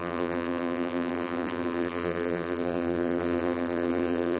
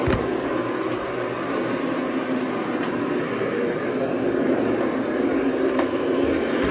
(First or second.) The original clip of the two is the second